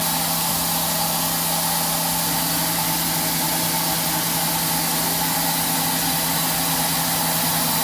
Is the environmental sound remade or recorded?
recorded